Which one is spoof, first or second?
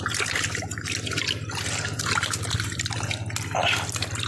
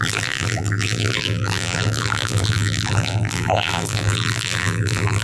second